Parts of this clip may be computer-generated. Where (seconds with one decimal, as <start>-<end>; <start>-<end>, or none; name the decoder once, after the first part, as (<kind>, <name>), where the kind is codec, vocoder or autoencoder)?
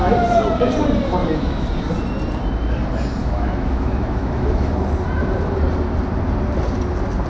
1.2-1.7 (autoencoder, DAC-VAE); 3.2-4.7